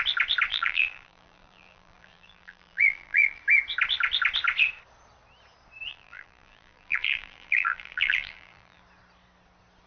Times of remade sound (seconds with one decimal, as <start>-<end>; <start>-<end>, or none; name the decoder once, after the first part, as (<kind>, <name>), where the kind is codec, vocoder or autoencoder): 0.5-3.4 (vocoder, BigVGAN v2); 5.9-8.8